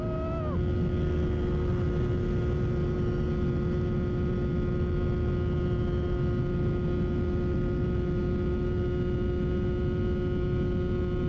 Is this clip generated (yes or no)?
no